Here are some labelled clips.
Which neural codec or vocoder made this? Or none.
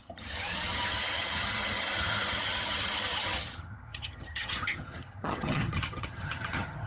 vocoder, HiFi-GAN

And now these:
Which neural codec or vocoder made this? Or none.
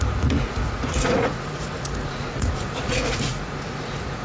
vocoder, Vocos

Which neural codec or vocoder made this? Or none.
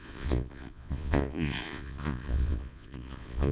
vocoder, Vocos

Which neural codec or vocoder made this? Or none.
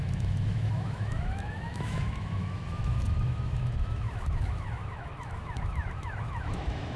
autoencoder, DAC-VAE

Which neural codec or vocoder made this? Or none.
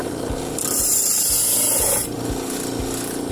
none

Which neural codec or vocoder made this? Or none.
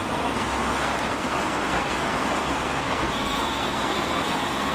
codec, SNAC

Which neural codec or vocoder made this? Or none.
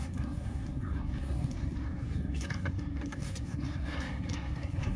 codec, SNAC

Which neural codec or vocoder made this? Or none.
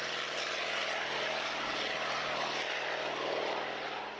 none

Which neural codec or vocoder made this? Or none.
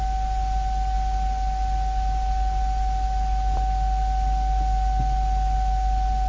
none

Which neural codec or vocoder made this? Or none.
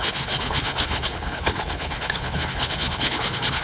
codec, HILCodec